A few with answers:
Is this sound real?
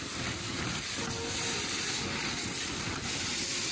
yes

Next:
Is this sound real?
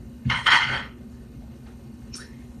no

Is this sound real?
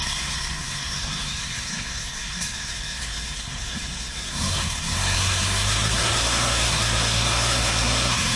no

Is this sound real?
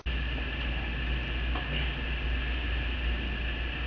yes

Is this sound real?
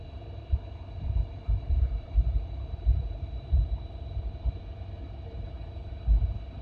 no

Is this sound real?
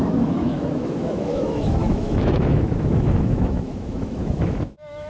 no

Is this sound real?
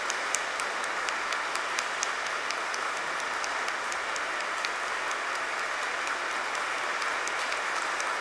yes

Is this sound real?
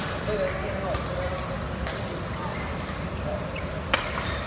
yes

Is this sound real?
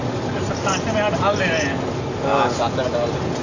yes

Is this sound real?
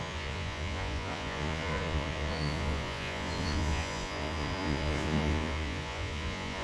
no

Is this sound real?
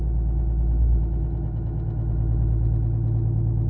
yes